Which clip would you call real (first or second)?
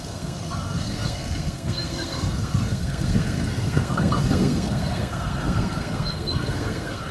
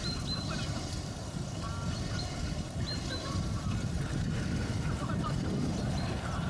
second